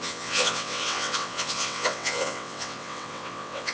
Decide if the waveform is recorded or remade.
remade